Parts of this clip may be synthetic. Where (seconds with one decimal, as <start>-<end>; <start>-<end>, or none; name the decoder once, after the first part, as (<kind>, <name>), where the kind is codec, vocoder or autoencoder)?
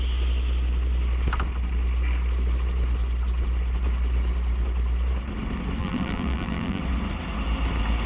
5.8-6.8 (vocoder, BigVGAN v2)